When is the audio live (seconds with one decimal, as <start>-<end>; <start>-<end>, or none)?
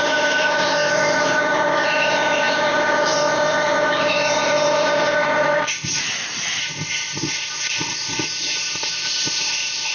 6.0-6.6